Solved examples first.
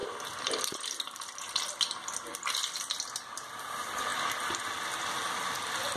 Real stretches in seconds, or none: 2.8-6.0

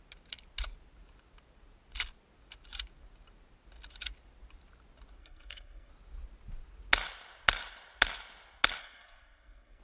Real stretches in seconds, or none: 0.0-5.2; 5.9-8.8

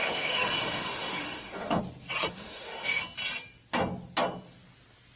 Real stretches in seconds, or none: 1.8-2.3; 3.0-5.2